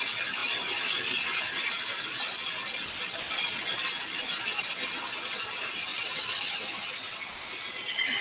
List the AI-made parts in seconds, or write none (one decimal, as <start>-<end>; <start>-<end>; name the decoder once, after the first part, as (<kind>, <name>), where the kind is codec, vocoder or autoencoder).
5.9-7.3 (vocoder, BigVGAN v2)

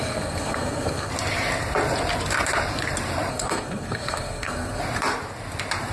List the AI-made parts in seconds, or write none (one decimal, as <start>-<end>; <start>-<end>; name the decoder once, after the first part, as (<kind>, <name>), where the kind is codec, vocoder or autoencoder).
0.0-1.1 (codec, SNAC); 3.3-4.8

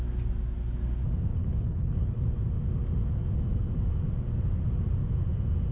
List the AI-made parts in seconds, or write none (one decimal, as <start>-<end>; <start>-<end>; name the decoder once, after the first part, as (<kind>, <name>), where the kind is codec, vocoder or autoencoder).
1.3-2.2 (codec, HILCodec)

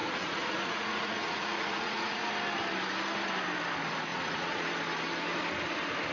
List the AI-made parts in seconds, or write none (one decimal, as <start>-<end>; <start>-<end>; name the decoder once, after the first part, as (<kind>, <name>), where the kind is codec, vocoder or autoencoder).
0.0-2.2 (vocoder, Vocos); 4.1-4.7

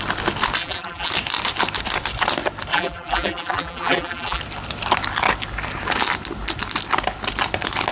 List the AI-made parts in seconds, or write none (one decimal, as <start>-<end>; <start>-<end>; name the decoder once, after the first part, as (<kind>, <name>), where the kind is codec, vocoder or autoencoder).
0.6-1.1 (vocoder, BigVGAN v2); 2.7-4.4

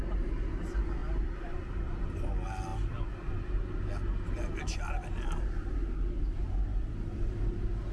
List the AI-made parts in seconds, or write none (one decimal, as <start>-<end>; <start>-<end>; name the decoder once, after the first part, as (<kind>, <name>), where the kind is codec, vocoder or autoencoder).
1.0-2.3 (vocoder, BigVGAN v2); 6.7-7.3